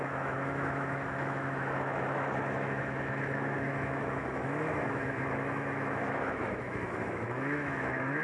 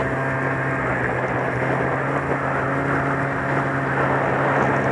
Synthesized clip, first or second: first